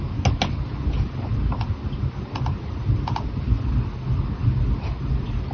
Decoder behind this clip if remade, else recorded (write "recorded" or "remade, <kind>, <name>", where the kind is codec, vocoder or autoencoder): recorded